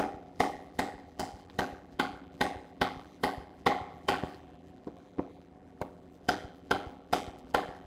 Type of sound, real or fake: fake